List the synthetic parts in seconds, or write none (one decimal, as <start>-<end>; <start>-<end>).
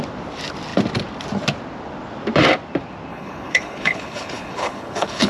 3.1-5.3